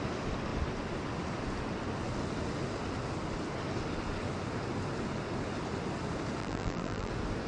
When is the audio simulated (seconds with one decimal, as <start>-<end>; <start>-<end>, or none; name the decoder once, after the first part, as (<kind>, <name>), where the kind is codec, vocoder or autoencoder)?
6.4-7.1 (vocoder, BigVGAN v2)